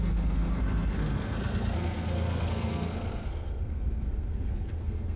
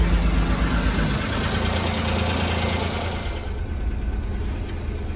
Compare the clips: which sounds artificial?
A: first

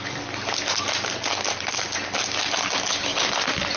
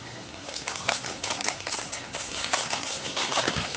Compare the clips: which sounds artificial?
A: second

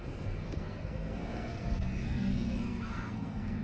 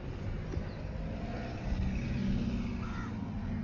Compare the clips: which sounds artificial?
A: first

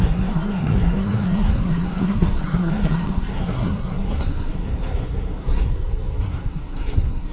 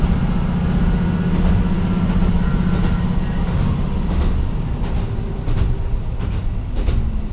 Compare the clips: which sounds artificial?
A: first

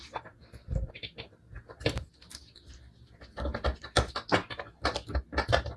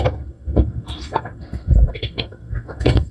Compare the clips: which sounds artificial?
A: second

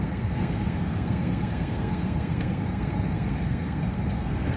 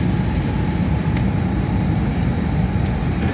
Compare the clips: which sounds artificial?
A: first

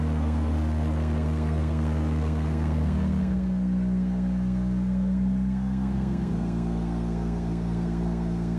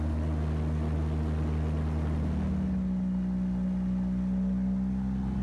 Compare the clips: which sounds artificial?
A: first